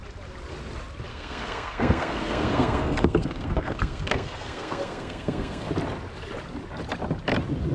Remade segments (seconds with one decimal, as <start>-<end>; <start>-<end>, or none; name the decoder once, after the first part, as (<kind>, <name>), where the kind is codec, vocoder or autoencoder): 1.1-5.7 (codec, SNAC)